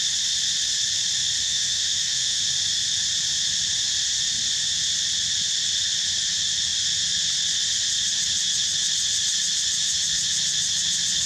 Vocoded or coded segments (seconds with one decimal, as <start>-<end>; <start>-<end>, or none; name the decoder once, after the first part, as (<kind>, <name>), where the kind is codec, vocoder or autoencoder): 1.4-2.5 (autoencoder, DAC-VAE)